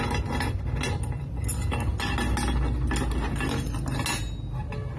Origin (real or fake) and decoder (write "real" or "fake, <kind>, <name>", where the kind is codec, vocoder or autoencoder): real